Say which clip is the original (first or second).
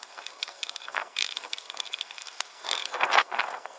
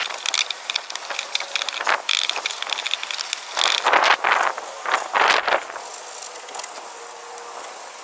second